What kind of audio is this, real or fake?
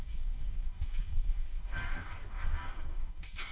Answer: fake